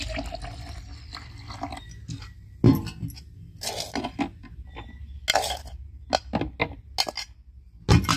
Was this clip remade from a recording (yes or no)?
no